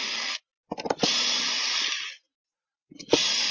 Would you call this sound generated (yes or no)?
no